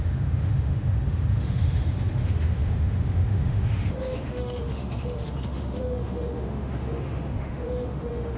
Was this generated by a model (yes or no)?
yes